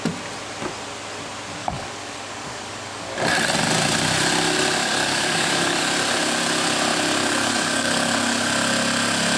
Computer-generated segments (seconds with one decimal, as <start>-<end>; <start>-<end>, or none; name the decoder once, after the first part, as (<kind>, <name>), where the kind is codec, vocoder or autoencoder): 1.6-3.2 (codec, DAC); 4.8-5.9; 7.2-8.5